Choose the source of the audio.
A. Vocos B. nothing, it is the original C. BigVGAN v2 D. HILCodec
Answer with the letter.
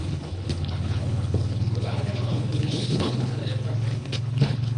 D